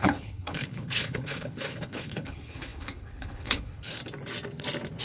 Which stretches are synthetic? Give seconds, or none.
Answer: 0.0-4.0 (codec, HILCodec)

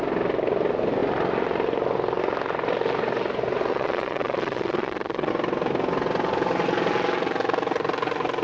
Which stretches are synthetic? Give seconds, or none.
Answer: 3.7-5.3 (vocoder, Vocos)

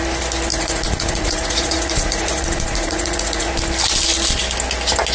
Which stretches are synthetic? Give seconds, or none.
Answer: 0.5-3.5 (vocoder, Vocos)